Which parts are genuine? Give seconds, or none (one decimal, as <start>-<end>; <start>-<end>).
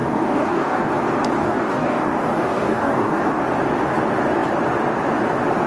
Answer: 0.9-1.4; 3.4-5.7